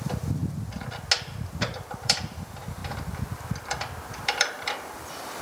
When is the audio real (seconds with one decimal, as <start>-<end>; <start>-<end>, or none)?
0.4-1.8; 2.8-4.1